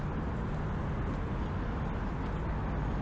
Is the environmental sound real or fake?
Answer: real